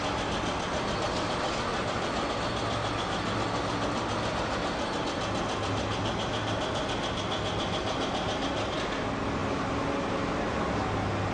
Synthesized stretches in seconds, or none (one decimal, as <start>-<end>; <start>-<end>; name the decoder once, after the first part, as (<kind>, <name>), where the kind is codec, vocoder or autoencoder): 1.7-2.3 (vocoder, BigVGAN v2); 9.4-10.3